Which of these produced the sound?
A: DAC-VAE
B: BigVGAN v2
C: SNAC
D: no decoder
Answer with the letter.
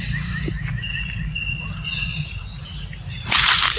D